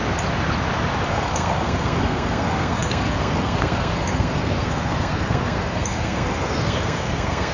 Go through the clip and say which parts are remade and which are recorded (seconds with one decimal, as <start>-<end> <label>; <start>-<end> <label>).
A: 0.0-1.1 recorded; 1.1-7.5 remade